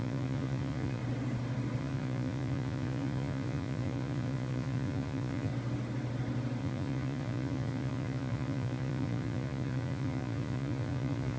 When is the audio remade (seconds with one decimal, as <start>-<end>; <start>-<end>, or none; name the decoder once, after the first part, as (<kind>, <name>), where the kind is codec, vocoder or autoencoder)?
0.0-1.0 (vocoder, Vocos); 1.8-5.5; 6.6-11.4